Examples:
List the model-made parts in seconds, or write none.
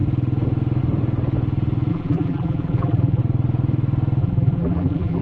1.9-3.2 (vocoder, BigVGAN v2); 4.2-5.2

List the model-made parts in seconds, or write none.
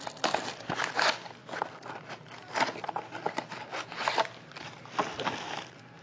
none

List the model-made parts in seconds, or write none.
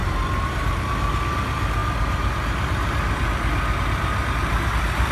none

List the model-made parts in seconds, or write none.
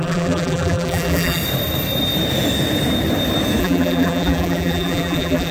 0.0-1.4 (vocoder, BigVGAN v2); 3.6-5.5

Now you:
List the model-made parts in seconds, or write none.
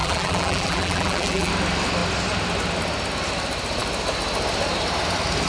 0.0-1.5 (vocoder, BigVGAN v2)